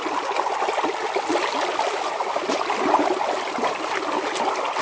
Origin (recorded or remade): recorded